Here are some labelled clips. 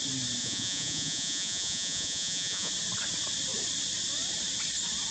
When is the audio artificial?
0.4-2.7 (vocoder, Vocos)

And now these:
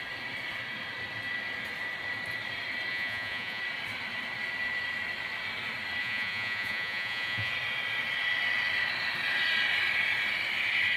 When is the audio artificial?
2.9-3.6 (vocoder, Vocos); 6.0-7.5

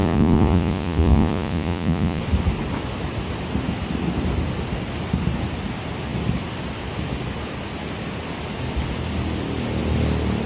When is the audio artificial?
0.0-2.2 (vocoder, Vocos)

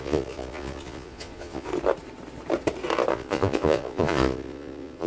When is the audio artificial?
0.0-1.7 (vocoder, Vocos); 3.1-5.1